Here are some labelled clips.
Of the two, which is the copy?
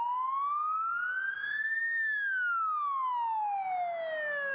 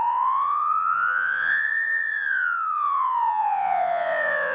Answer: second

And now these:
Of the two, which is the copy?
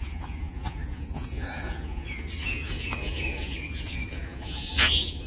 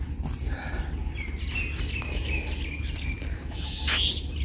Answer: first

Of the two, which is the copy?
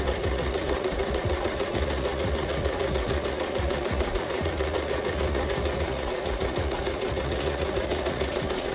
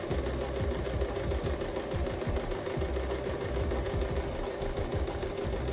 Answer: first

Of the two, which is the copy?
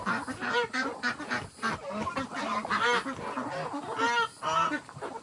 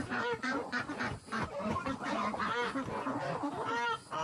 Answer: second